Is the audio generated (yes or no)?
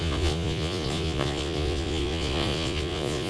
yes